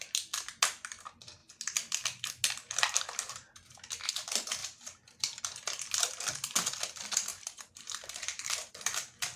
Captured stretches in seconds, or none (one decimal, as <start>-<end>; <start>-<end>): 0.0-4.6; 5.4-7.3; 8.7-9.4